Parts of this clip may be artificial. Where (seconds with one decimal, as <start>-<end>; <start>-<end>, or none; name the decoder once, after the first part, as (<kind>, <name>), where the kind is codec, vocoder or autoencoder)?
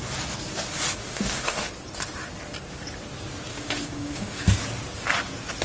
1.0-1.7 (autoencoder, DAC-VAE); 3.5-4.4